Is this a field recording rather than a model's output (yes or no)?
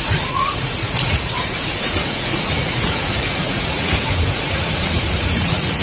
no